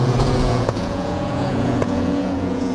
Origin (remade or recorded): remade